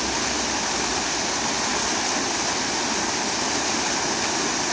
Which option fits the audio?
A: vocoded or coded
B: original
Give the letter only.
B